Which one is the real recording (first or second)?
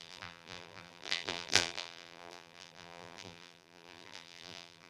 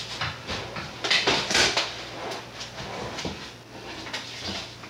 second